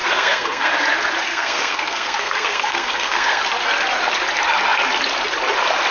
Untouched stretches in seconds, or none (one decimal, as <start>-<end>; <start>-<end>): 0.7-1.3; 3.4-5.9

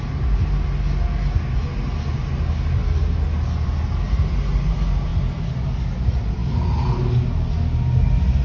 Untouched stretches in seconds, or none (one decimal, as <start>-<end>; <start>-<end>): 0.0-8.4

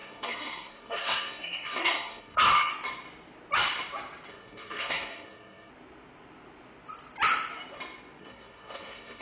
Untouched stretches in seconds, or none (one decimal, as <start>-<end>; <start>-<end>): 2.7-4.3; 5.7-8.2